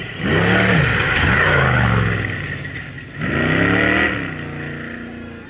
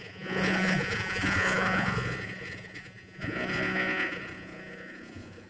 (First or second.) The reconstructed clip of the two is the second